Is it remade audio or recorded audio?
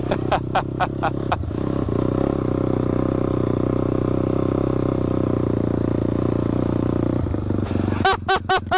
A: recorded